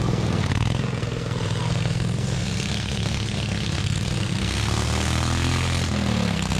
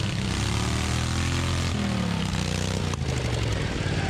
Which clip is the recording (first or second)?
second